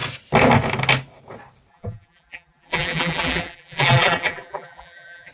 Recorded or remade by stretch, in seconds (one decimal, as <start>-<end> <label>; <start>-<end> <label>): 0.0-1.7 recorded; 1.7-5.3 remade